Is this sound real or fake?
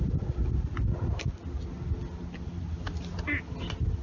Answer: real